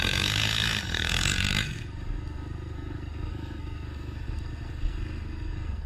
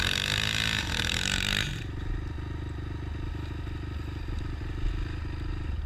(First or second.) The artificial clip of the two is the first